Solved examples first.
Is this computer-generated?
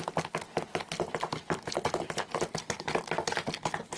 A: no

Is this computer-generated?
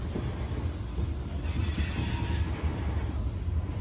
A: no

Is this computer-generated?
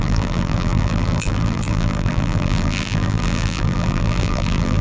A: yes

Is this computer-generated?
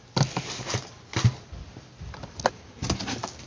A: no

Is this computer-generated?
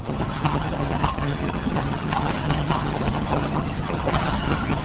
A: yes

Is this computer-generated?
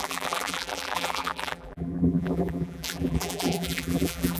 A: yes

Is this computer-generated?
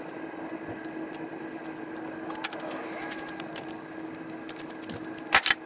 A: no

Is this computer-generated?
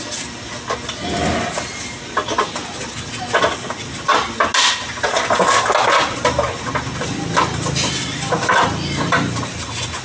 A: no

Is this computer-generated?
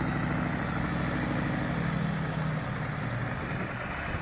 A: no